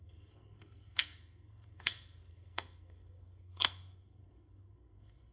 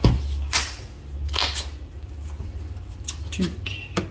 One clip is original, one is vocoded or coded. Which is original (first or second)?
second